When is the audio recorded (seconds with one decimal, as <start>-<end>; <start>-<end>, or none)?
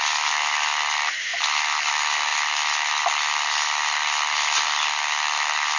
0.0-5.8